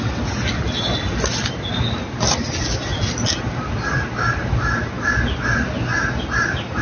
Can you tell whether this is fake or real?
real